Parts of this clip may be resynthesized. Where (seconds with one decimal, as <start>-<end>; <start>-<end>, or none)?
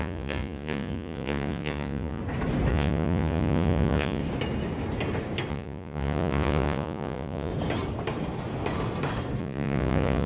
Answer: 0.0-2.2; 2.7-4.2; 5.5-7.5; 9.4-10.3